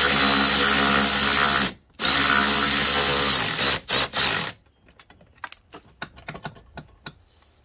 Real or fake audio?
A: real